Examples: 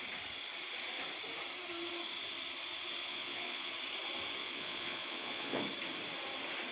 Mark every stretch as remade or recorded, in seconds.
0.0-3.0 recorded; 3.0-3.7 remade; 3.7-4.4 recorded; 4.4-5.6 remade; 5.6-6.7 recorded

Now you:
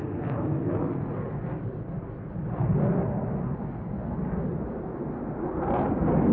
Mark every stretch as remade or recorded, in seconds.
0.0-6.3 recorded

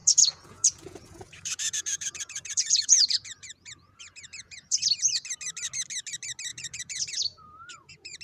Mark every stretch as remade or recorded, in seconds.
0.0-4.8 remade; 4.8-6.5 recorded; 6.5-8.2 remade

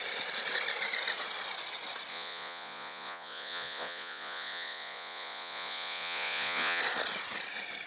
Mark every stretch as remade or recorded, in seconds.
0.0-2.1 recorded; 2.1-6.8 remade; 6.8-7.9 recorded